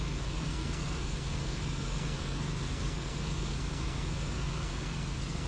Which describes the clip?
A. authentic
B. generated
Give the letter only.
B